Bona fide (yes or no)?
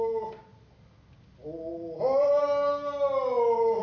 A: yes